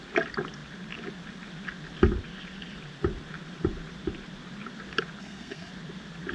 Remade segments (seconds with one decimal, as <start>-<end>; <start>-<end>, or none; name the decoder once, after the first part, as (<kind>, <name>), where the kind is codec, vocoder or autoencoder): 5.2-5.7 (codec, SNAC)